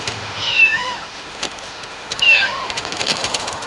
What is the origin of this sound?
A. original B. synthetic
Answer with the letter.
B